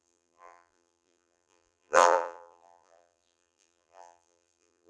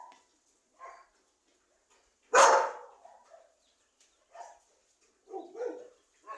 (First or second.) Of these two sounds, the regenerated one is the first